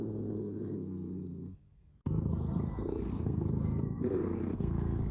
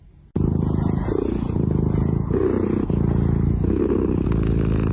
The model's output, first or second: first